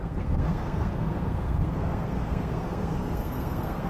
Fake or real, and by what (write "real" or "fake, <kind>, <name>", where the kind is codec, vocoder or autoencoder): fake, codec, SNAC